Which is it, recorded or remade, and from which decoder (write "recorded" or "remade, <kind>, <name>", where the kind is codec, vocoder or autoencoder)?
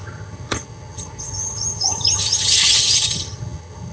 remade, vocoder, HiFi-GAN